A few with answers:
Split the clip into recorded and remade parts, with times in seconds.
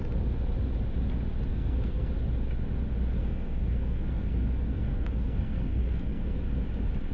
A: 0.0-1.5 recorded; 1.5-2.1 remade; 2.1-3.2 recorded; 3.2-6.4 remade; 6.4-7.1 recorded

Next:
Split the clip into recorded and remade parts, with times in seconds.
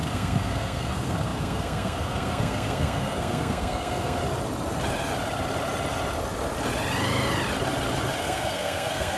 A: 0.0-4.2 remade; 4.2-8.2 recorded; 8.2-9.2 remade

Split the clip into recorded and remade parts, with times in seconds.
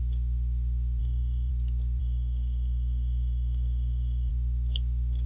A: 0.0-1.0 recorded; 1.0-1.5 remade; 1.5-2.0 recorded; 2.0-4.3 remade; 4.3-5.3 recorded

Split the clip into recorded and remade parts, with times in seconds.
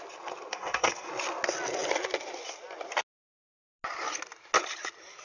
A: 0.0-0.5 recorded; 0.5-1.1 remade; 1.1-5.2 recorded